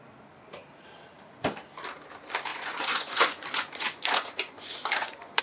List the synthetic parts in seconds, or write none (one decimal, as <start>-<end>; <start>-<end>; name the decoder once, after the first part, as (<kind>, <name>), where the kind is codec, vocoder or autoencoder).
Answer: 2.5-5.4 (vocoder, Vocos)